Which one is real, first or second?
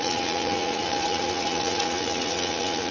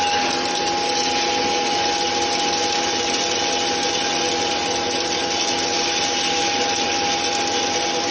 second